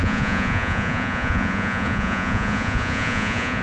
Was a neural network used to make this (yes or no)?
yes